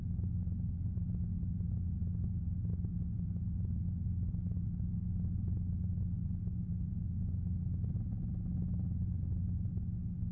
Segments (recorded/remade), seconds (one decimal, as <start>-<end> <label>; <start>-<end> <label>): 0.0-10.3 recorded

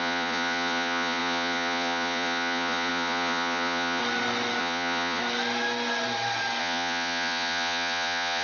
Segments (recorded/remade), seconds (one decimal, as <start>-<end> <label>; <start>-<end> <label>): 0.0-4.0 remade; 4.0-4.6 recorded; 4.6-5.2 remade; 5.2-6.6 recorded; 6.6-8.4 remade

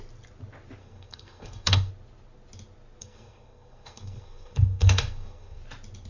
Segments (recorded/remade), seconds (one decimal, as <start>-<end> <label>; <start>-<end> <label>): 0.0-0.8 recorded; 0.8-1.9 remade; 1.9-3.0 recorded; 3.0-5.6 remade; 5.6-6.1 recorded